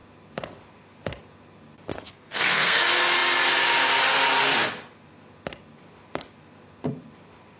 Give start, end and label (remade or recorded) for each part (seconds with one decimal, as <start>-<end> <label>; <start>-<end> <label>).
0.0-1.9 recorded; 1.9-2.8 remade; 2.8-7.6 recorded

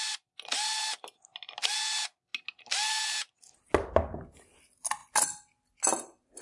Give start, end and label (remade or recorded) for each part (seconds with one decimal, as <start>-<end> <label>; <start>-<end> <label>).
0.0-6.4 recorded

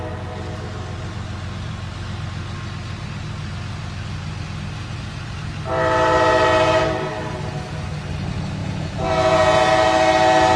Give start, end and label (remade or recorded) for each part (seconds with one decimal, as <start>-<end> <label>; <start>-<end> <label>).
0.0-8.6 recorded; 8.6-9.7 remade; 9.7-10.6 recorded

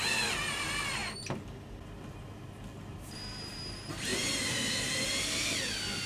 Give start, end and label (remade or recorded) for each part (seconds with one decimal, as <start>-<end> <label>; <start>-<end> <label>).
0.0-6.1 recorded

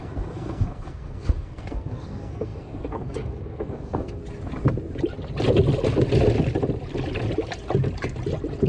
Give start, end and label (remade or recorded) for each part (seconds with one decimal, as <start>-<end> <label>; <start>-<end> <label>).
0.0-4.2 remade; 4.2-8.7 recorded

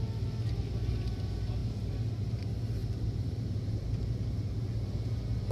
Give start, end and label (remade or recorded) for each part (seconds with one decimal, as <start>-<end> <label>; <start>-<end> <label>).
0.0-2.8 recorded; 2.8-4.0 remade; 4.0-5.5 recorded